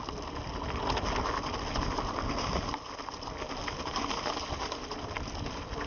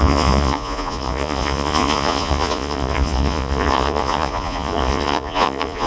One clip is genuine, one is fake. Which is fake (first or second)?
second